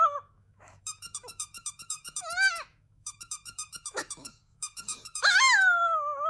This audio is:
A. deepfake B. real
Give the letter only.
A